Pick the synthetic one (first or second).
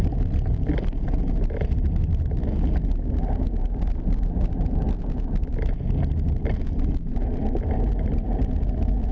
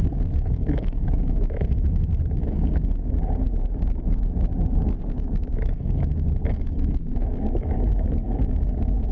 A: second